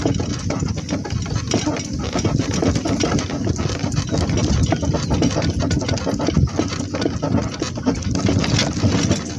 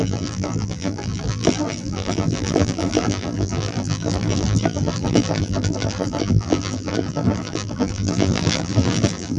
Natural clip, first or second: first